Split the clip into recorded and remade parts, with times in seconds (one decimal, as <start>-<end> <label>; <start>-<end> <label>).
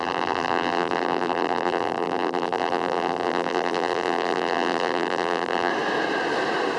0.0-5.7 remade; 5.7-6.8 recorded